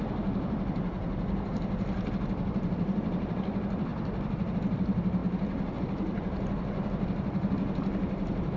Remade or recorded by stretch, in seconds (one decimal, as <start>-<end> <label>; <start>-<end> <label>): 0.0-5.2 remade; 5.2-5.8 recorded; 5.8-8.6 remade